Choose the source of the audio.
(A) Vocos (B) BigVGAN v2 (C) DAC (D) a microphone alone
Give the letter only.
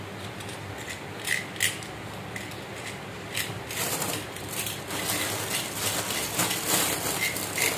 D